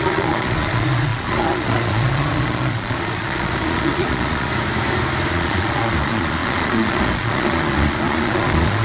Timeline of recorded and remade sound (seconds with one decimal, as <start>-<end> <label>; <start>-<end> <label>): 0.0-4.5 remade; 4.5-5.3 recorded; 5.3-8.8 remade